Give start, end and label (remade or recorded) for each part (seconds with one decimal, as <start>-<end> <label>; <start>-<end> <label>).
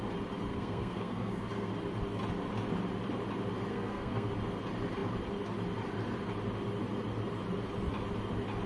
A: 0.0-0.5 recorded; 0.5-1.7 remade; 1.7-3.7 recorded; 3.7-4.3 remade; 4.3-8.7 recorded